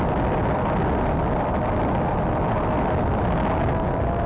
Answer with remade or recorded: recorded